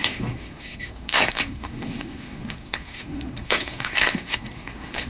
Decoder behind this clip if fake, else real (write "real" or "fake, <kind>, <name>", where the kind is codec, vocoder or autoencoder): fake, codec, SNAC